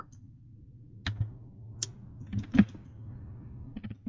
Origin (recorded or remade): recorded